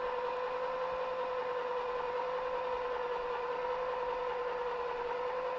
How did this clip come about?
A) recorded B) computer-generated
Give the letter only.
A